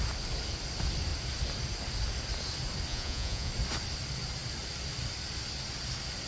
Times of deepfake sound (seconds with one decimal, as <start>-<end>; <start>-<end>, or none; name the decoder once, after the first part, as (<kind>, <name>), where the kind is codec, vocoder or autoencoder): 2.9-3.5 (vocoder, Vocos)